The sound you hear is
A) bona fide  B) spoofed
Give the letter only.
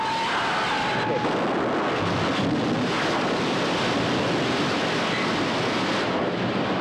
A